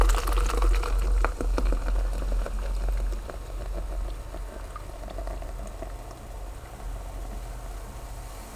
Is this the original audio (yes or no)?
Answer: yes